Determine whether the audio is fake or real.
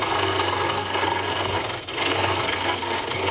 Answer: fake